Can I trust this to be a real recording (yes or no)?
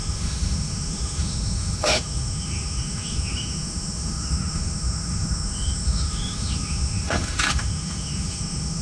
no